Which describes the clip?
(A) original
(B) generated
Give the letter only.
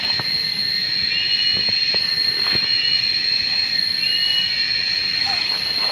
A